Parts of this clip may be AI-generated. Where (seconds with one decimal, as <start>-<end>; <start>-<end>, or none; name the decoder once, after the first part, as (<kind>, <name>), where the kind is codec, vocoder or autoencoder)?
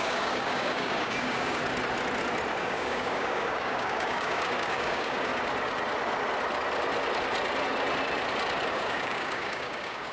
0.0-1.6 (codec, DAC); 2.5-5.3; 8.7-10.1